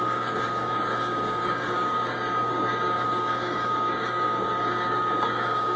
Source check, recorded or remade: remade